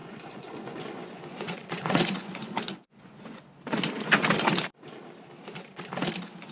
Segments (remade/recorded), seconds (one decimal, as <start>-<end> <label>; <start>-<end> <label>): 0.0-3.4 remade; 3.4-6.5 recorded